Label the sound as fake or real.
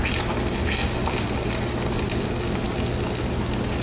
real